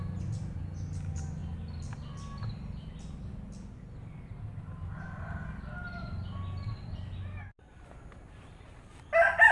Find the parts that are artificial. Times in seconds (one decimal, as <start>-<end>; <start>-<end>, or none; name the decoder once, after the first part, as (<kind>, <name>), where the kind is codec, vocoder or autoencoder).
none